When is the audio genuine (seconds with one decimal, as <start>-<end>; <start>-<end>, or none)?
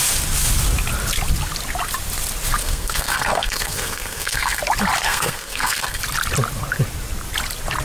0.0-2.6; 4.6-5.0; 6.0-7.8